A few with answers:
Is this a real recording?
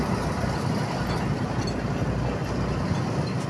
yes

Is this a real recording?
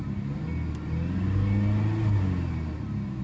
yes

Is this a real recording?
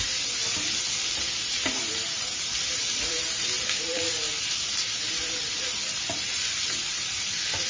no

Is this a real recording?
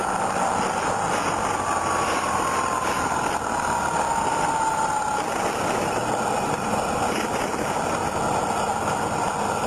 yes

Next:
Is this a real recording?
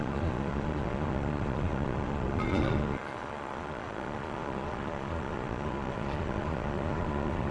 no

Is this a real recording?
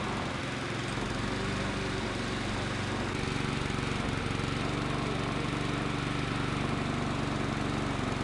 yes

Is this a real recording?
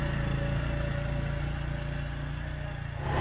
yes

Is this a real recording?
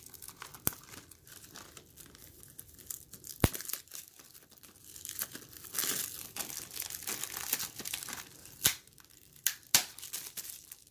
yes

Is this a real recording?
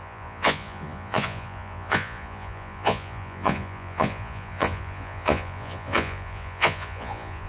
no